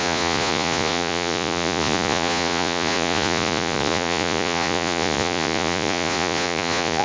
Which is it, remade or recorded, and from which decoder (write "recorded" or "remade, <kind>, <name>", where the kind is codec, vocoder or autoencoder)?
remade, vocoder, Vocos